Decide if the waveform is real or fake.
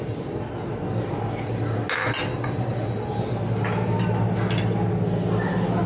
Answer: real